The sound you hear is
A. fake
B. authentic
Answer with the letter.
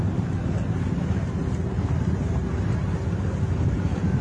B